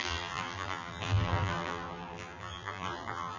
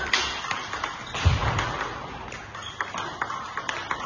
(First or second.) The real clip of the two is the second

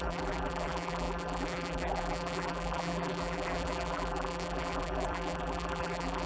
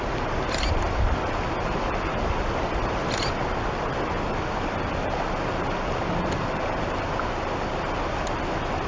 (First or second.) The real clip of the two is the second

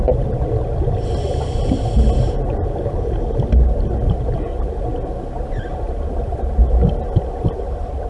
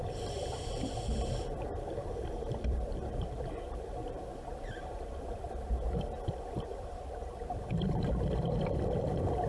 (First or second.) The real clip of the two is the first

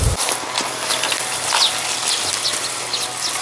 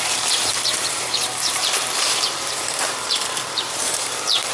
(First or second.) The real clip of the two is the first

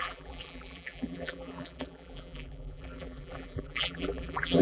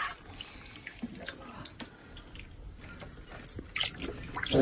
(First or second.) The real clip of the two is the second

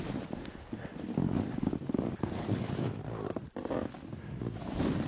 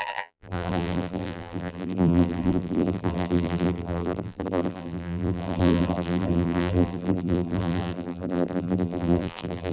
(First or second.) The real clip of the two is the first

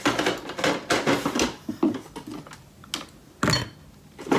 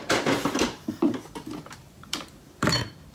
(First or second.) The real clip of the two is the first